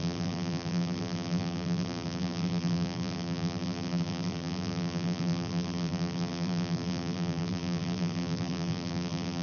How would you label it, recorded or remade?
remade